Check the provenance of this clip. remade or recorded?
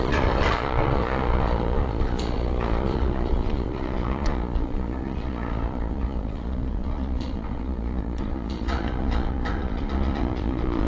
remade